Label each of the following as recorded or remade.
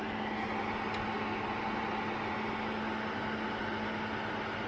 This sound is recorded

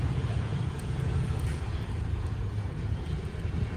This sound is remade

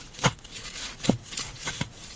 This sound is remade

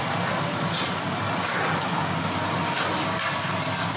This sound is recorded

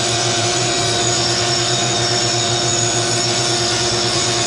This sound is remade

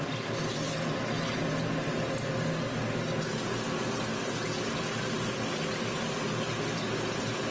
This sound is recorded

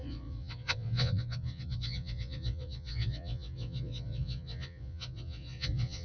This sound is remade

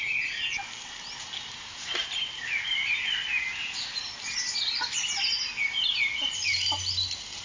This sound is recorded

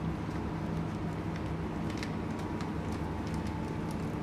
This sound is recorded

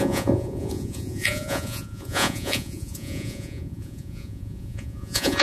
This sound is remade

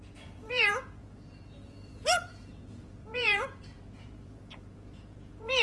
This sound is remade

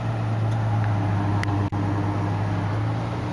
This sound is recorded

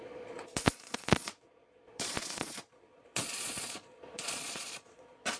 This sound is remade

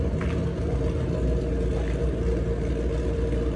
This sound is recorded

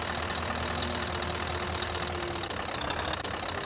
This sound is recorded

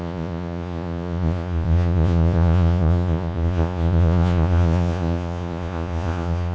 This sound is remade